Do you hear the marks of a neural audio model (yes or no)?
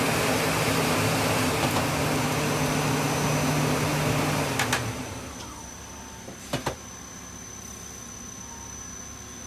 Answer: no